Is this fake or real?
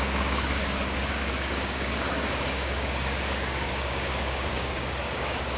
fake